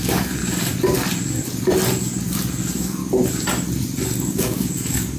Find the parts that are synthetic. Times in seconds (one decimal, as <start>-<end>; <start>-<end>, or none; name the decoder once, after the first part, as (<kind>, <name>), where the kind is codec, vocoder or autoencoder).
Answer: 0.0-0.4 (codec, DAC); 2.6-3.0; 4.3-5.2